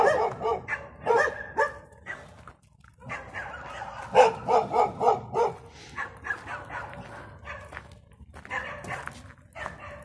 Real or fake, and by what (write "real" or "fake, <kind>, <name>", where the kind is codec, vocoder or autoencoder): real